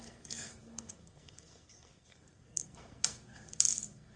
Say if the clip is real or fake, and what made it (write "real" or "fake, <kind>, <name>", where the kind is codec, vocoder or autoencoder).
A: fake, codec, SNAC